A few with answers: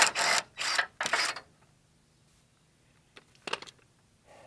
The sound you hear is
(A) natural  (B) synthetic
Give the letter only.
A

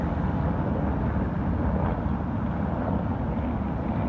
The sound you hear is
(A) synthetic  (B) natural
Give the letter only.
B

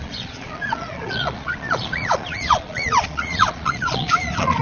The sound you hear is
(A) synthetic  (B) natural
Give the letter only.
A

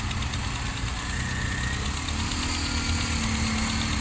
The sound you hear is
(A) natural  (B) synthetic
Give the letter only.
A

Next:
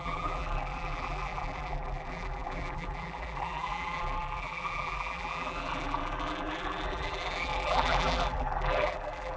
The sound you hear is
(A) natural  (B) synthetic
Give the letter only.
B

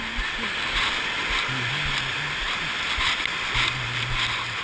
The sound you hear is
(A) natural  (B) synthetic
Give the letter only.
A